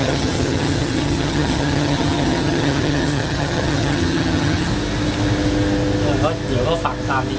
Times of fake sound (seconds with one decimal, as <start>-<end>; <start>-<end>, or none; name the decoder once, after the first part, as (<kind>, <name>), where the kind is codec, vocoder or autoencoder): 0.0-4.7 (vocoder, HiFi-GAN)